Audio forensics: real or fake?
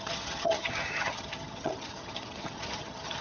fake